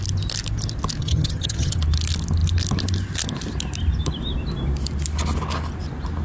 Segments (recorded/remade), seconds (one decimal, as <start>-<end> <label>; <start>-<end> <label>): 0.0-1.0 recorded; 1.0-1.8 remade; 1.8-6.2 recorded